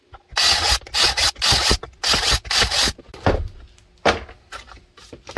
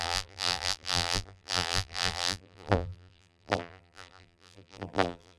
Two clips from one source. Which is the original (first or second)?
first